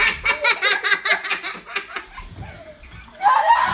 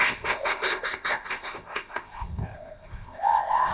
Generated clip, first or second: second